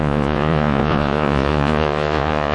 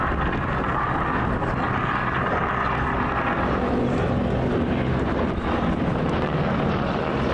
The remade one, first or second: first